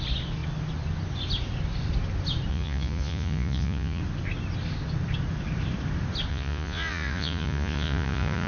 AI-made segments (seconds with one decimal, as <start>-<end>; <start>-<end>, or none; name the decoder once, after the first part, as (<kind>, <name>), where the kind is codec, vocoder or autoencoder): 2.5-4.0 (vocoder, Vocos); 6.3-8.5